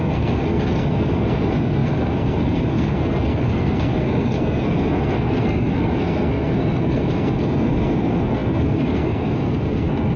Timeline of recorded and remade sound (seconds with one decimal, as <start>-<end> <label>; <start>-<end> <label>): 0.0-10.2 remade